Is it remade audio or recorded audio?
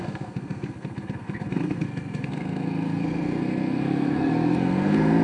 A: remade